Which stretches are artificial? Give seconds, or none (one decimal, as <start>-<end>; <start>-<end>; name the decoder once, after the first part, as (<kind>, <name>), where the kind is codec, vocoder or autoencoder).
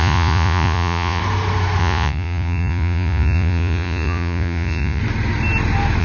0.0-1.2 (vocoder, Vocos); 1.8-5.0